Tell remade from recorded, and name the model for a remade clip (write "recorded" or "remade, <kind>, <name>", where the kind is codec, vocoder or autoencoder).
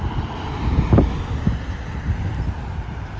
recorded